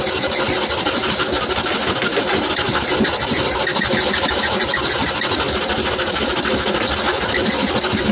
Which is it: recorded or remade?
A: recorded